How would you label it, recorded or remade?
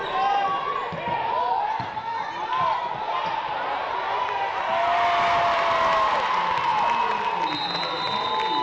recorded